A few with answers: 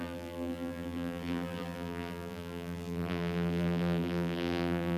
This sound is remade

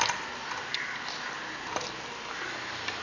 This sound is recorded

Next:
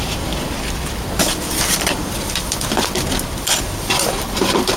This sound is remade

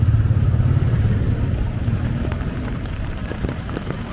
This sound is remade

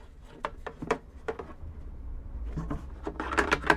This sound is remade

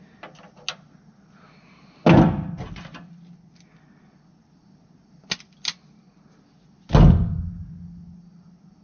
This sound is recorded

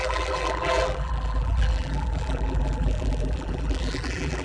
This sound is remade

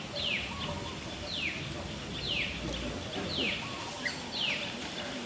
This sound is recorded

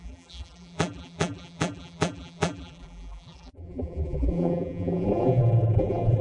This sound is remade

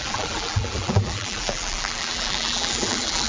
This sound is remade